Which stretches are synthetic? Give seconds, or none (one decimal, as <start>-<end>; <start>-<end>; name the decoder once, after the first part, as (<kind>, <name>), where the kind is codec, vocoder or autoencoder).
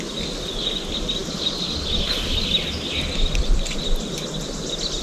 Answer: none